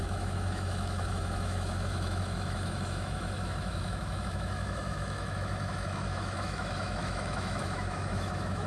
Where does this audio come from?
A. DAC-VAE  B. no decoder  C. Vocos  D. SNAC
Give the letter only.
A